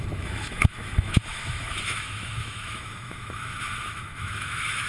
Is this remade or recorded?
remade